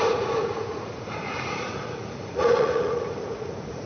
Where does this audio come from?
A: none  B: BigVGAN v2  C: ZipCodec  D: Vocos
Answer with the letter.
D